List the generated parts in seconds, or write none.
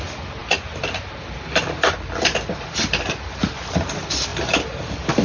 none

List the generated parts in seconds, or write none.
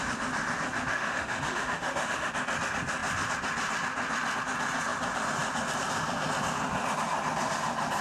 0.9-2.3 (autoencoder, DAC-VAE)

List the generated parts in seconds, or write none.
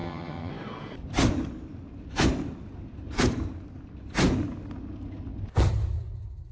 0.0-0.5 (vocoder, HiFi-GAN)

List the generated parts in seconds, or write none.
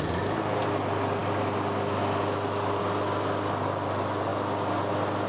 none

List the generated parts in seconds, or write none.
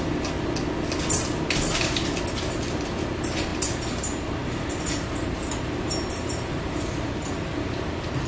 none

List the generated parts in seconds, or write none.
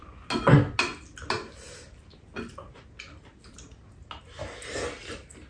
none